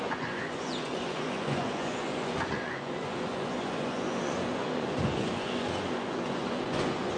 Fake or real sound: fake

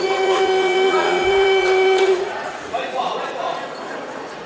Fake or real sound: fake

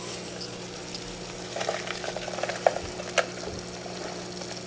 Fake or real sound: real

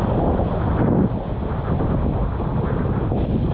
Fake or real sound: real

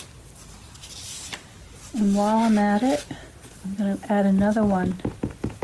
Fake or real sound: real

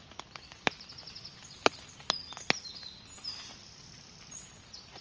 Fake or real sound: real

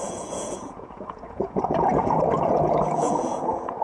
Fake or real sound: fake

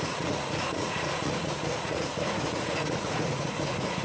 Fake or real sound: fake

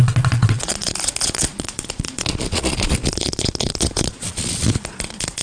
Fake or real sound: fake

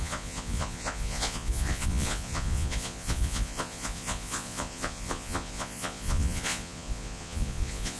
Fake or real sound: fake